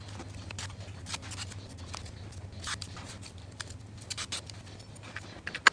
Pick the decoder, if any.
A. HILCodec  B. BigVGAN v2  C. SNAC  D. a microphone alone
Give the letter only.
D